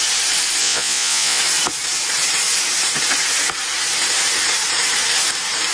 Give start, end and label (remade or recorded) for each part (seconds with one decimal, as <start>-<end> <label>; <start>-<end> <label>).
0.0-0.6 recorded; 0.6-1.4 remade; 1.4-5.7 recorded